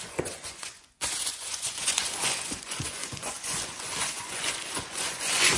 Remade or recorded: remade